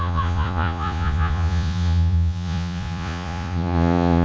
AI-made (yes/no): yes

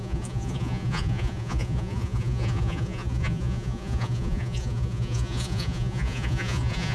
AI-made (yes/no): yes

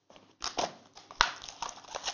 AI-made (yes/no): no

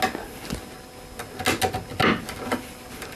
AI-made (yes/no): no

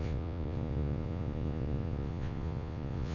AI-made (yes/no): yes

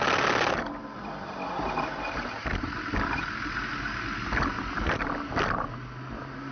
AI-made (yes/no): no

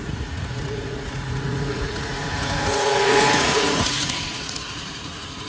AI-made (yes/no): yes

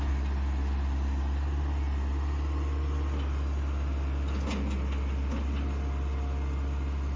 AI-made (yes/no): no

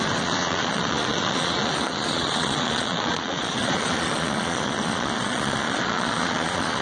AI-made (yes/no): yes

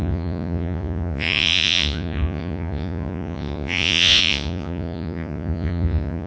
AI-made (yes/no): yes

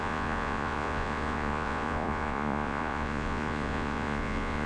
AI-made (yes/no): yes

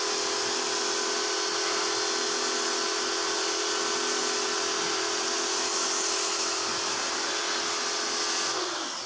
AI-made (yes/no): no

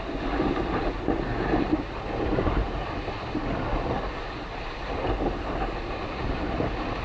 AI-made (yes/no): no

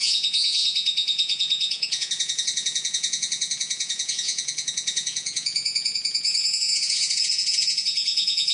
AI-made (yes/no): yes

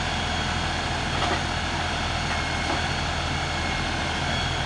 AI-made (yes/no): no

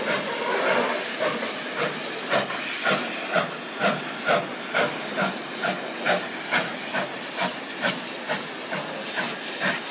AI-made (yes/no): no